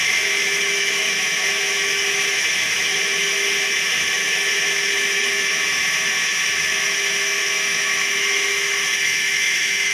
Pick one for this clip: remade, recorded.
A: remade